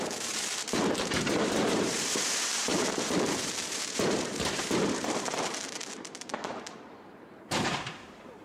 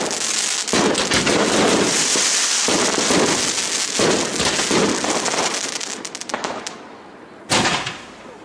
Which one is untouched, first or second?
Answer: second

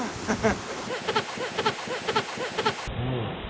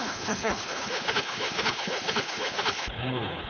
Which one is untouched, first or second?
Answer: first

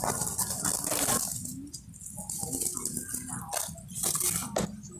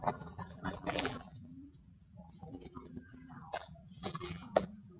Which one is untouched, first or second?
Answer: first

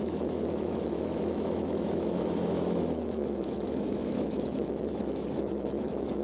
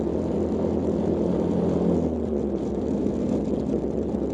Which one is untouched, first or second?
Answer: second